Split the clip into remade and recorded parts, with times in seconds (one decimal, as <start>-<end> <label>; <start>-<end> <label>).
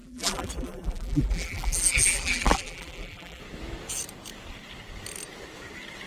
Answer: 0.0-3.4 remade; 3.4-6.1 recorded